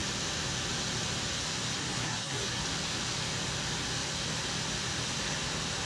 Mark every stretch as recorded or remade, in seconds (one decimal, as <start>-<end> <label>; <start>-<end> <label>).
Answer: 0.0-1.8 recorded; 1.8-2.6 remade; 2.6-5.9 recorded